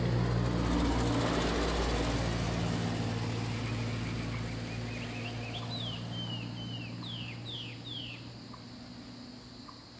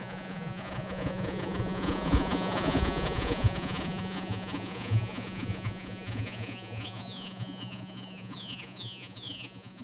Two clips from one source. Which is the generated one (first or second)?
second